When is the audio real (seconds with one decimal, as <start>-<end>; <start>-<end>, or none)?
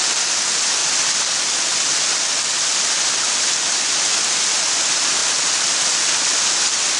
0.0-7.0